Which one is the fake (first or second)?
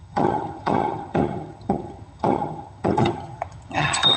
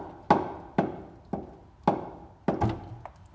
first